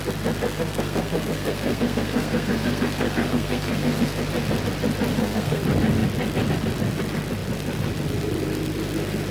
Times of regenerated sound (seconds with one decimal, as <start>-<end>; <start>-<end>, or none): 0.5-4.3; 5.1-5.6